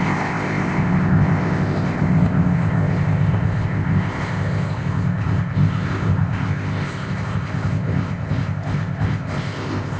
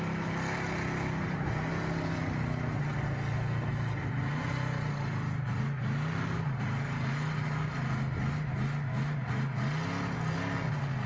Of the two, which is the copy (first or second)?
first